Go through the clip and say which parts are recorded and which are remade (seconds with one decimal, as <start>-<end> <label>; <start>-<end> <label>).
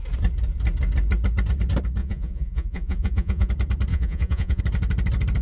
0.0-2.0 recorded; 2.0-3.5 remade; 3.5-3.9 recorded; 3.9-4.6 remade; 4.6-5.4 recorded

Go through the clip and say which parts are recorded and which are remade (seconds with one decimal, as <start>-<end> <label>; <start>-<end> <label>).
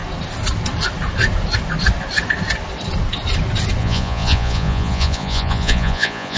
0.0-3.8 recorded; 3.8-6.4 remade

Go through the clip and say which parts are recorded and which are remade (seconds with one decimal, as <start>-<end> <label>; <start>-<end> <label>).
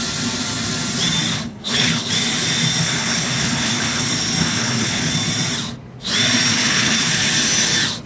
0.0-1.3 recorded; 1.3-2.1 remade; 2.1-2.8 recorded; 2.8-4.0 remade; 4.0-4.4 recorded; 4.4-5.1 remade; 5.1-6.5 recorded; 6.5-7.1 remade; 7.1-8.1 recorded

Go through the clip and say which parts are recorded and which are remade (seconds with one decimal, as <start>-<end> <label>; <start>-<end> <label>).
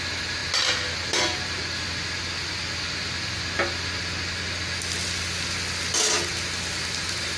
0.0-7.4 recorded